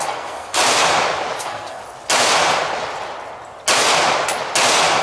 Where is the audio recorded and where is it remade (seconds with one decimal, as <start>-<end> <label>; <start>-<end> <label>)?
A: 0.0-0.6 remade; 0.6-1.4 recorded; 1.4-1.8 remade; 1.8-5.0 recorded